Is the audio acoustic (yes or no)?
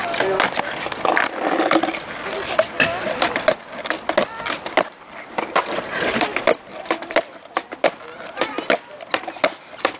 yes